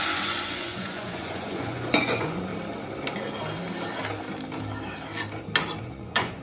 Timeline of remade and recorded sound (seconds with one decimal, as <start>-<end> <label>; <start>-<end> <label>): 0.0-2.5 remade; 2.5-5.8 recorded; 5.8-6.4 remade